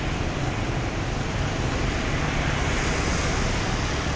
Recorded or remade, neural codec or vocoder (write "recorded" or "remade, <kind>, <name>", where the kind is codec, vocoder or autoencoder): recorded